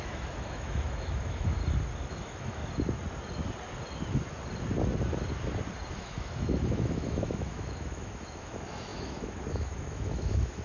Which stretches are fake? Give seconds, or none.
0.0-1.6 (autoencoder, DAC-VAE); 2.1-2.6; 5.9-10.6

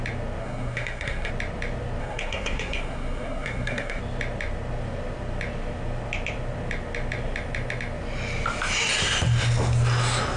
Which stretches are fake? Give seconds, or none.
0.4-1.3 (codec, SNAC); 2.0-4.0

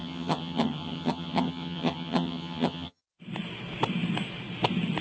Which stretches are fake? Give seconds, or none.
0.0-3.0 (vocoder, HiFi-GAN)

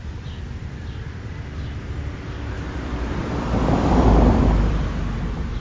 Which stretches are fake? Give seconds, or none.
0.0-5.6 (vocoder, BigVGAN v2)